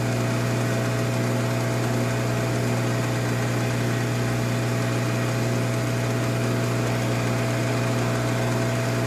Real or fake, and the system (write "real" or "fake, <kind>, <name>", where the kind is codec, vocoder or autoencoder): real